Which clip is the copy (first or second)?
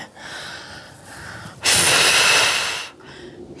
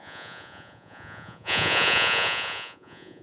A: second